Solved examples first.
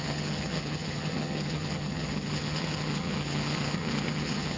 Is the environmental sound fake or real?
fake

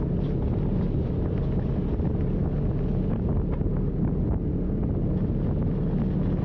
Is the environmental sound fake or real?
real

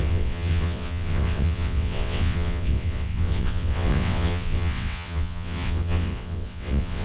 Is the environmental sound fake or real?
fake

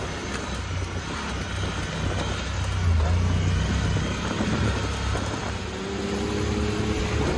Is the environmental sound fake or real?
real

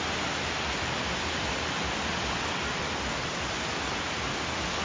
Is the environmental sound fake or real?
real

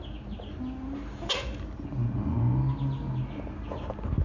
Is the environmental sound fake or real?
real